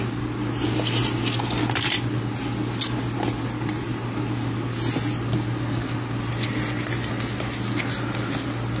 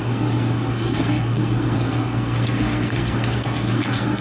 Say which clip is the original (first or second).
first